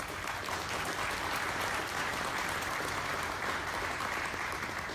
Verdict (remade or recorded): recorded